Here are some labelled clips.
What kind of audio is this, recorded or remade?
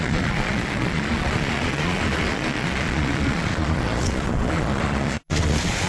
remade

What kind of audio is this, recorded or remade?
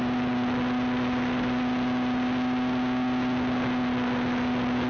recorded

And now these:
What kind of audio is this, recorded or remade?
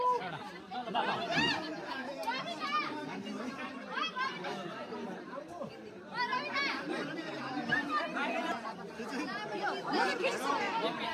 remade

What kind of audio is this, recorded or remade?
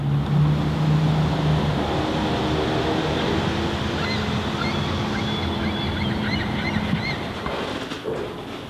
recorded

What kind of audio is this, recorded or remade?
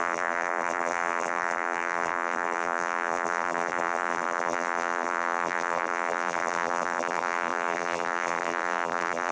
remade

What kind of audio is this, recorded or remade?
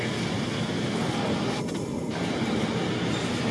recorded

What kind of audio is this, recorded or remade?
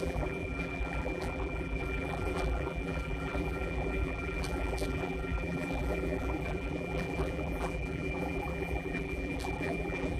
remade